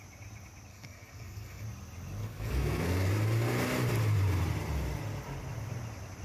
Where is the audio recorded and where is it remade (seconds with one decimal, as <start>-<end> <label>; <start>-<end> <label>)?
0.0-0.7 recorded; 0.7-1.6 remade; 1.6-2.2 recorded; 2.2-3.1 remade; 3.1-6.2 recorded